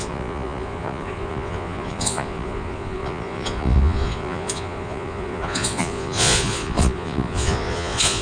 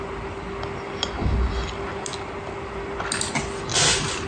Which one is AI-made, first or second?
first